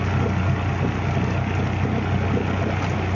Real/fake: real